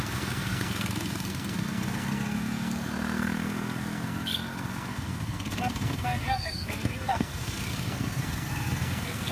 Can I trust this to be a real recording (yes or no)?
no